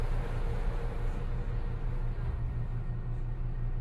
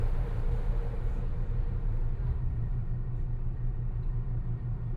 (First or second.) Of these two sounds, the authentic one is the first